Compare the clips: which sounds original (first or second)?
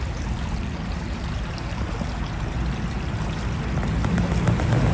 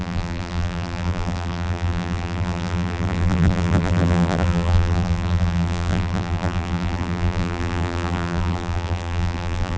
first